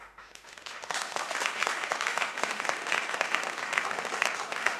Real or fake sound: fake